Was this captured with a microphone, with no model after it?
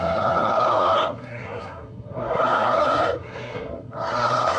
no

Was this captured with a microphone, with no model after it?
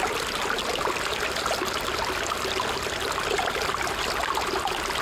yes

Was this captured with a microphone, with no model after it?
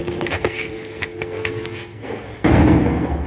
no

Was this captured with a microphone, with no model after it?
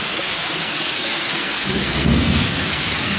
no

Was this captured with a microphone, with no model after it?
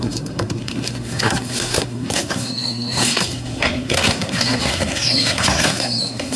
no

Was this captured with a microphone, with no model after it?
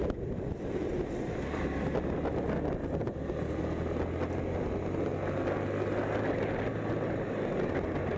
yes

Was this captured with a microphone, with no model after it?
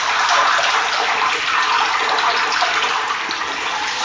yes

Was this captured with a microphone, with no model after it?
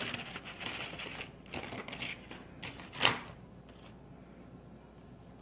yes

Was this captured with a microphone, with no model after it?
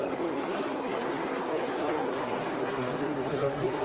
no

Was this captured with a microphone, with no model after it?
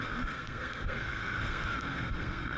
no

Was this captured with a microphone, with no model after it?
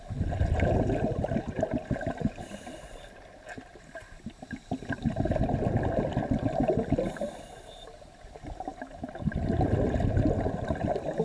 yes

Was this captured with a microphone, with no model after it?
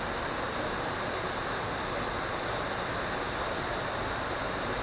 yes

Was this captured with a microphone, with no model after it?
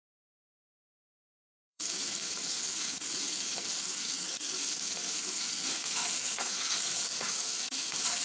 no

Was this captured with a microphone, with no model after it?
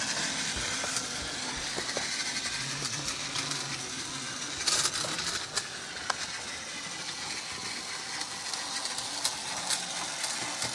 yes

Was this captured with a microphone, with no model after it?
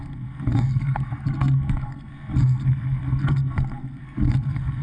no